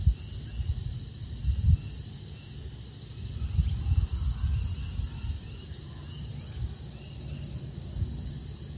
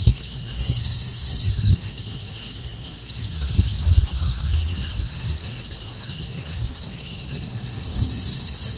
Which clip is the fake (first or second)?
second